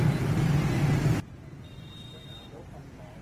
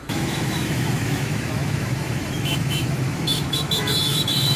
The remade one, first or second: second